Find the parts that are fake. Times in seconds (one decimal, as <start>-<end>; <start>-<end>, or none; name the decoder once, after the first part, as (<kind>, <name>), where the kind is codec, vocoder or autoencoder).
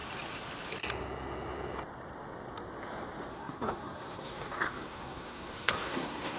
3.3-6.4 (codec, SNAC)